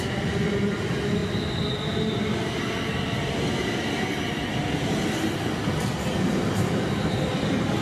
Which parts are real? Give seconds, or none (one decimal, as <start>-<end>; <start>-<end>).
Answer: 0.0-7.8